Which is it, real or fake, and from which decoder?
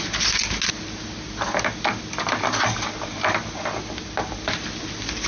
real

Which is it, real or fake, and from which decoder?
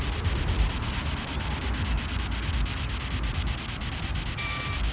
fake, vocoder, BigVGAN v2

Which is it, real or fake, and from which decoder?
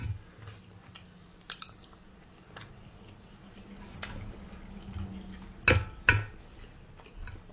real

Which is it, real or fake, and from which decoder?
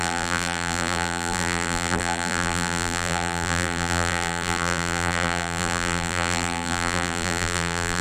fake, vocoder, BigVGAN v2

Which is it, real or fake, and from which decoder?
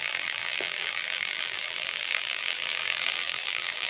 fake, vocoder, BigVGAN v2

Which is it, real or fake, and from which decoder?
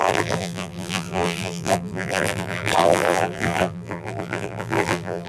fake, vocoder, BigVGAN v2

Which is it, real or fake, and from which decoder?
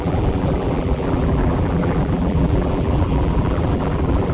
fake, vocoder, BigVGAN v2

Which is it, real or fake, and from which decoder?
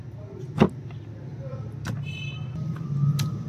real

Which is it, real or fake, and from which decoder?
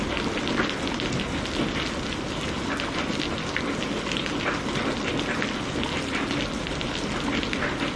real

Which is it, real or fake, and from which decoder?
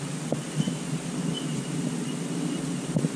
real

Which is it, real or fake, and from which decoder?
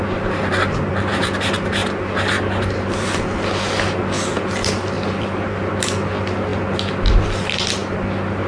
real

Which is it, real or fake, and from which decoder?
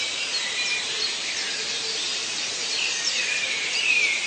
fake, vocoder, BigVGAN v2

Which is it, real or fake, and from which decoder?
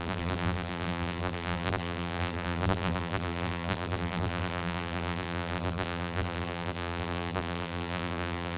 fake, vocoder, BigVGAN v2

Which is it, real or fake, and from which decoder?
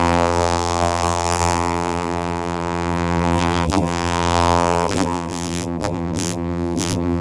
fake, vocoder, BigVGAN v2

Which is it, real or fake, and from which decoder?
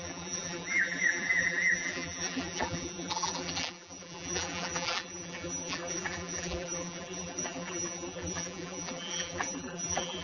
fake, vocoder, BigVGAN v2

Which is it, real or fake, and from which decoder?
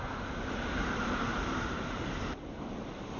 fake, vocoder, BigVGAN v2